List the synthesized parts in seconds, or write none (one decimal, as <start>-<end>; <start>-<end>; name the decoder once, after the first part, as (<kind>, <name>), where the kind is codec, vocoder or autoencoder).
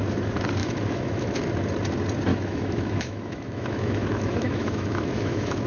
0.6-1.5 (autoencoder, DAC-VAE); 2.3-5.7